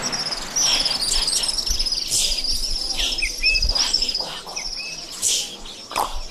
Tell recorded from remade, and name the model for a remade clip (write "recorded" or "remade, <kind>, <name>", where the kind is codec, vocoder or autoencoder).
recorded